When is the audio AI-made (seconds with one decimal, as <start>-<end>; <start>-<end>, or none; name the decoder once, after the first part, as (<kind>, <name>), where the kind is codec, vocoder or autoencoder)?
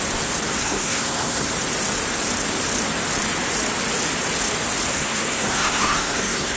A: 0.5-1.5 (codec, SNAC); 4.9-6.6